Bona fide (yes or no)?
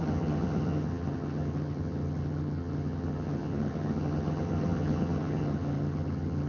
no